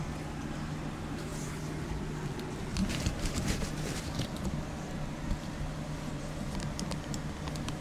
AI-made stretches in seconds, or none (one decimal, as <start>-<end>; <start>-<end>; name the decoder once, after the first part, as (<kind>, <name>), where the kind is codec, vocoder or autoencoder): 2.8-4.3 (vocoder, BigVGAN v2)